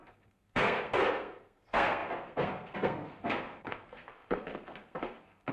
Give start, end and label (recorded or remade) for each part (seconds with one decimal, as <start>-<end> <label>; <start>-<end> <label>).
0.0-5.5 remade